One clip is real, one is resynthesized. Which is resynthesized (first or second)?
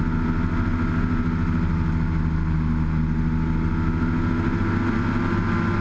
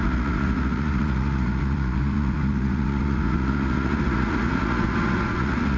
second